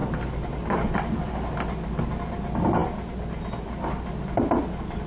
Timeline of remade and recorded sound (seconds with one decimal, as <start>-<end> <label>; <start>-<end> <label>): 0.0-5.1 recorded